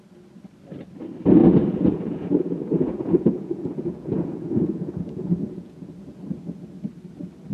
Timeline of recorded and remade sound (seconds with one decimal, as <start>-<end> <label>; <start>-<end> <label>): 0.0-1.4 recorded; 1.4-5.9 remade; 5.9-7.5 recorded